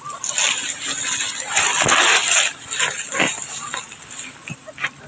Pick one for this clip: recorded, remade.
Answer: recorded